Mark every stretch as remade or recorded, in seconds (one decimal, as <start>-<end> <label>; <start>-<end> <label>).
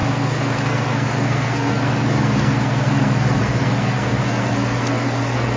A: 0.0-5.6 remade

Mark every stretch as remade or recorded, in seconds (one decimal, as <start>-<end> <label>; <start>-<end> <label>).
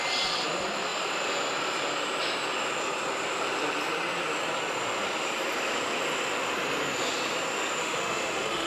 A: 0.0-7.8 recorded; 7.8-8.7 remade